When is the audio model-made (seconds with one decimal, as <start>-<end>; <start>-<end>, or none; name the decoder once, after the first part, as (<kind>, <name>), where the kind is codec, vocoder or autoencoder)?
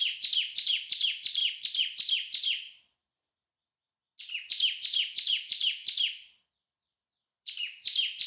0.0-1.4 (vocoder, BigVGAN v2); 4.5-5.8; 6.5-8.3